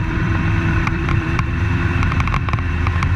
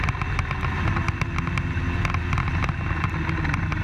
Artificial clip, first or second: first